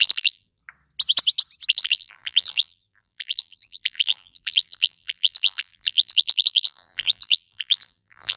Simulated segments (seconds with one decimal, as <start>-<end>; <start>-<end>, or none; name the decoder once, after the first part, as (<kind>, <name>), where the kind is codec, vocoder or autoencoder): 0.0-0.6 (vocoder, BigVGAN v2); 1.7-8.4